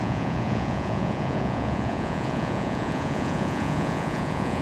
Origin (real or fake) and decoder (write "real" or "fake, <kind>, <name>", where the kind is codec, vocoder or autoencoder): fake, vocoder, Vocos